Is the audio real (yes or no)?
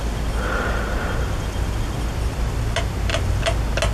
yes